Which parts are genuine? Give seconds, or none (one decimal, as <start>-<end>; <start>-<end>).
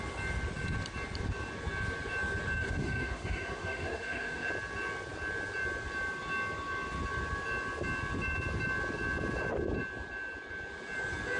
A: 0.0-2.6; 4.5-11.4